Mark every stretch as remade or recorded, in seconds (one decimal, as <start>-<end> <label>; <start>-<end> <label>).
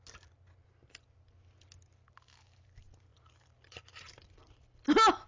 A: 0.0-3.1 recorded; 3.1-5.3 remade